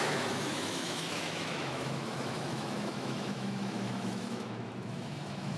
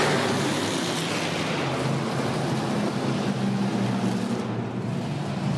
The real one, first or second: second